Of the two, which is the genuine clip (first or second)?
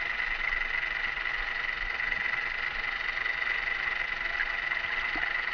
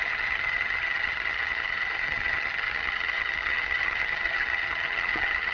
first